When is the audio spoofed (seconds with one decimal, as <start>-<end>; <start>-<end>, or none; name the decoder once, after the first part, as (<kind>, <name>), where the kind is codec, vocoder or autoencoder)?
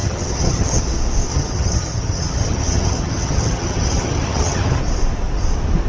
0.0-0.8 (vocoder, HiFi-GAN); 1.3-4.8